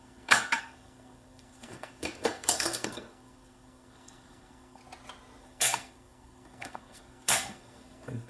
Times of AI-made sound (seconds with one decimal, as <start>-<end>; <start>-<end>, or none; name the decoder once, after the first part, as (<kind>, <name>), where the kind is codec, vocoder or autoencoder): 0.0-4.8 (codec, SNAC); 5.4-8.3